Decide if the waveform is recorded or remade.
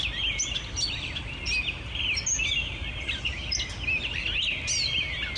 recorded